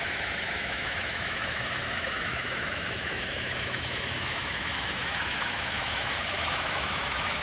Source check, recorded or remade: remade